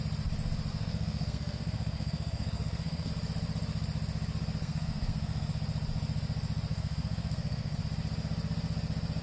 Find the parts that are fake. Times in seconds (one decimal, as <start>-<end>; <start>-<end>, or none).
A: 0.7-3.1; 4.6-5.5; 6.7-7.8